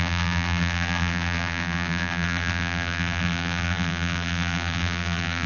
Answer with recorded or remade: remade